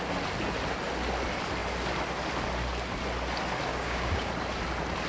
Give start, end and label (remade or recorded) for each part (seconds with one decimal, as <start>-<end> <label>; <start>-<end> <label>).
0.0-3.7 recorded; 3.7-4.3 remade; 4.3-5.1 recorded